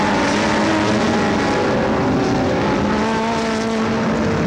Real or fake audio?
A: real